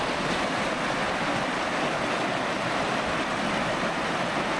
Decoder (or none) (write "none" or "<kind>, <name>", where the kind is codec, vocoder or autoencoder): none